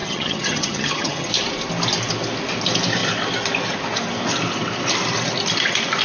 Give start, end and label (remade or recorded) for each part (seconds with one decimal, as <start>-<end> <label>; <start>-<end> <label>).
0.0-1.3 remade; 1.3-6.0 recorded